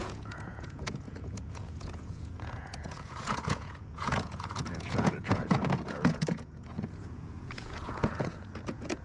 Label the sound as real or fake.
fake